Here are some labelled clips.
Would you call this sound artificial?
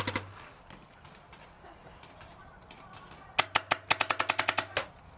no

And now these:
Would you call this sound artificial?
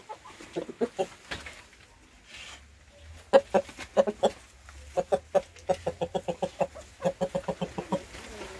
no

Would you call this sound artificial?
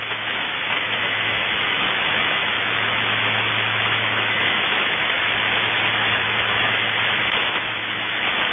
yes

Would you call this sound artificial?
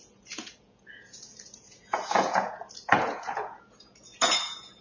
yes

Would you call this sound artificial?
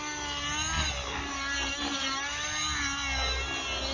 no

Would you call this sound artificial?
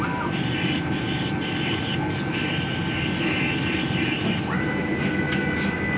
no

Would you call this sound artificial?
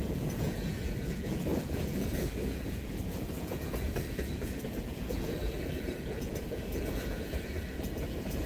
yes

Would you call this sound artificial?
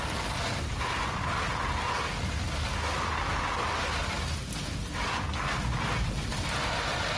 no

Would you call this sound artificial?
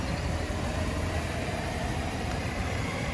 yes